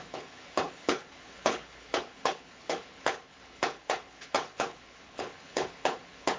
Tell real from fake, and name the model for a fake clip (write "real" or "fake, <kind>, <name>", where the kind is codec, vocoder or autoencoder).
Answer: fake, codec, HILCodec